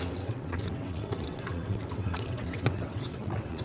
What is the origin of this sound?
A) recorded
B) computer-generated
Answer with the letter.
B